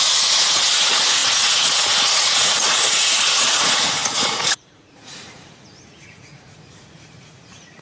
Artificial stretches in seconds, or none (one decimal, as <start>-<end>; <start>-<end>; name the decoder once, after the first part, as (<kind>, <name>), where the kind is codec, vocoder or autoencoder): 0.0-7.8 (vocoder, Vocos)